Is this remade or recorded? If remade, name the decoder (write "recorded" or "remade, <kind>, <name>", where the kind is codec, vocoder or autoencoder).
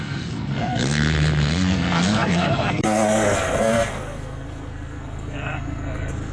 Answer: remade, codec, SNAC